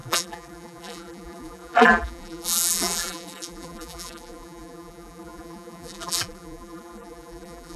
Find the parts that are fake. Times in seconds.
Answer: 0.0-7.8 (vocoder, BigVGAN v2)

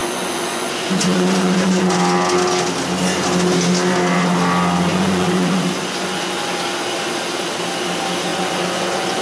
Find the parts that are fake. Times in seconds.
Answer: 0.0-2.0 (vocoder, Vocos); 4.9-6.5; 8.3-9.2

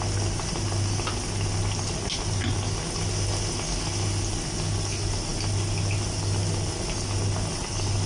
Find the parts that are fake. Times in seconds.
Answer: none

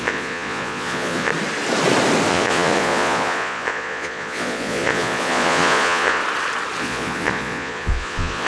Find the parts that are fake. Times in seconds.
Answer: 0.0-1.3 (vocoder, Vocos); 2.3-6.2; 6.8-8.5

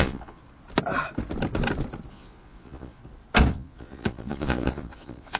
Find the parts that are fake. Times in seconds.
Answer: 0.0-0.4 (vocoder, Vocos); 2.1-3.0; 3.5-5.4